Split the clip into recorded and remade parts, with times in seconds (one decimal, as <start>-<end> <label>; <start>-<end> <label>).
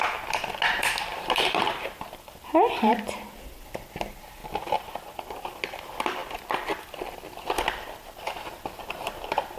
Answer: 0.0-1.1 recorded; 1.1-3.0 remade; 3.0-4.4 recorded; 4.4-5.2 remade; 5.2-9.6 recorded